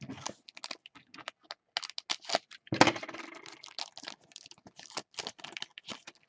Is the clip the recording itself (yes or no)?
yes